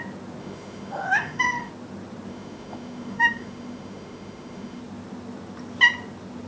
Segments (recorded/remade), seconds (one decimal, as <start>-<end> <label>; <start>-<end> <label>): 0.0-0.4 recorded; 0.4-1.7 remade; 1.7-2.3 recorded; 2.3-4.8 remade; 4.8-6.5 recorded